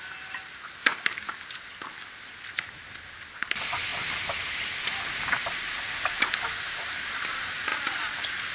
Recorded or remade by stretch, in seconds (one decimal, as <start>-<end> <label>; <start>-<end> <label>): 0.0-8.5 recorded